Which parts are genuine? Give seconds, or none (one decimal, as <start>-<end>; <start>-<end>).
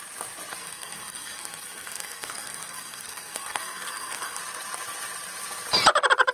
0.0-0.6; 4.4-6.3